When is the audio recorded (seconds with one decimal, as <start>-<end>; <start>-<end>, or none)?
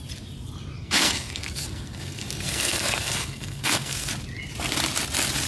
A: 0.0-0.8; 4.1-5.5